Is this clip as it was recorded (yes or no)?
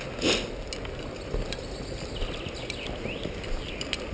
yes